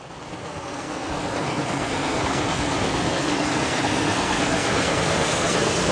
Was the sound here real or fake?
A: fake